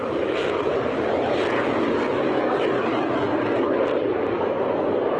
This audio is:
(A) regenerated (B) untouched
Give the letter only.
B